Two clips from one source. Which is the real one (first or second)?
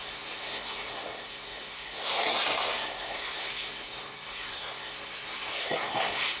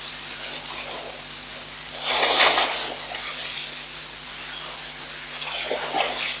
second